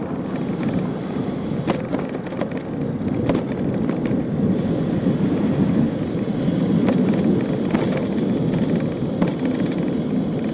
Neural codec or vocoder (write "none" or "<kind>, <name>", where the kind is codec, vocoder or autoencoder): none